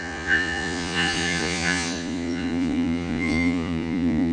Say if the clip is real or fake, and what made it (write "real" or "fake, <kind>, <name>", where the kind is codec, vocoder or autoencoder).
fake, vocoder, Vocos